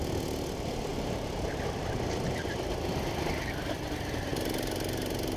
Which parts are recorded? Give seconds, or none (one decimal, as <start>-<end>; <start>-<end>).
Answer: 0.0-5.4